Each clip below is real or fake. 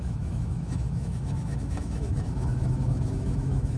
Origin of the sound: fake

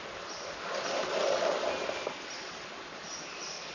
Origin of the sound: real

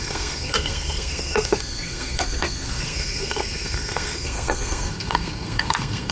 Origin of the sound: fake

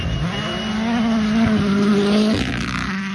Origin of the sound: real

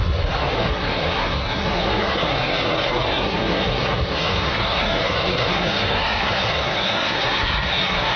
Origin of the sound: fake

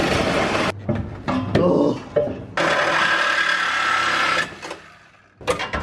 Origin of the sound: real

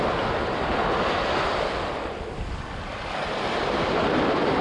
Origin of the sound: real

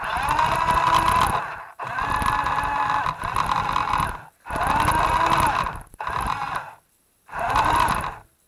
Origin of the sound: real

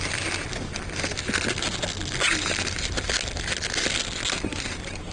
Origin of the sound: real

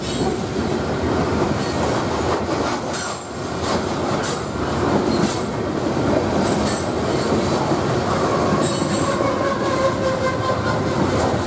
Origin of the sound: real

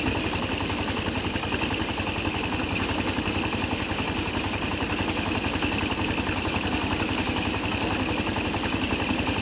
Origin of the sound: real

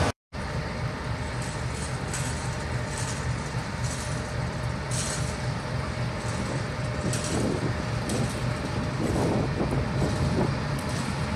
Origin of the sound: fake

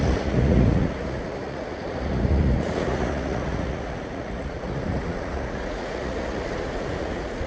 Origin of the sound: fake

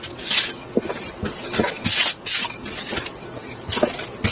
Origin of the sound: real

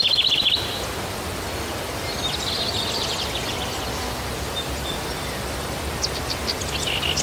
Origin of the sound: real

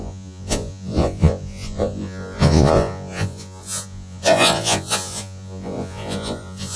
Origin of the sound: fake